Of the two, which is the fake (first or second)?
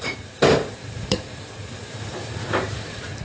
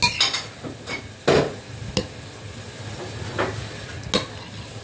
first